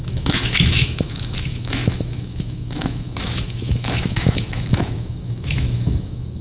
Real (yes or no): no